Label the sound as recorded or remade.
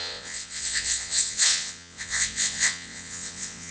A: remade